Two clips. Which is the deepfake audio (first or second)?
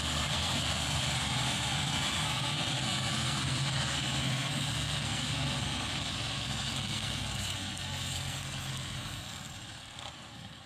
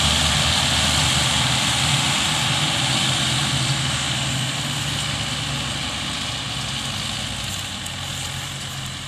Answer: first